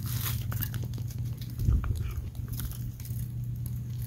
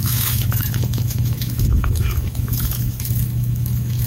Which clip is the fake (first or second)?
second